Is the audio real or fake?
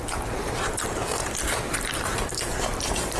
fake